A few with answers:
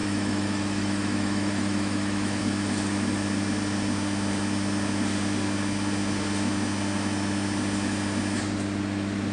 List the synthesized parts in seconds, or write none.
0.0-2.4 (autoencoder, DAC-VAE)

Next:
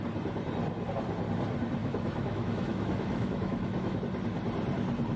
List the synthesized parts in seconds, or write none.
1.8-4.0 (autoencoder, DAC-VAE)

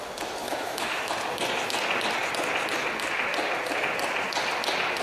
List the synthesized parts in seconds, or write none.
0.4-1.1 (autoencoder, DAC-VAE)

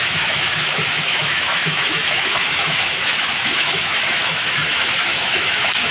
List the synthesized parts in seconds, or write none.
0.0-5.9 (autoencoder, DAC-VAE)

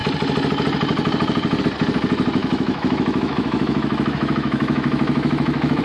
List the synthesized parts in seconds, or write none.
2.4-5.8 (autoencoder, DAC-VAE)